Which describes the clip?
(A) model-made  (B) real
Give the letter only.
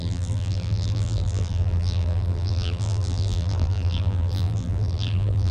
A